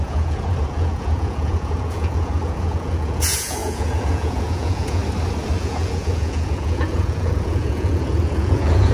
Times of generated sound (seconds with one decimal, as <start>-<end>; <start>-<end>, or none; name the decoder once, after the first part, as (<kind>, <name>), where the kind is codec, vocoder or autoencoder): 0.0-5.0 (vocoder, Vocos); 5.6-8.9